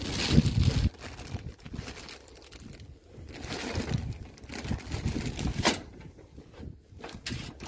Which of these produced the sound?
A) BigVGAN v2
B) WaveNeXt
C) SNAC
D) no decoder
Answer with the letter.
D